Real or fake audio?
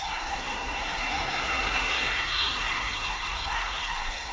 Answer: fake